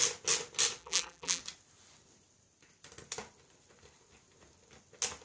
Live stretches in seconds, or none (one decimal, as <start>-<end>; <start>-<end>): 0.0-0.8; 1.4-5.2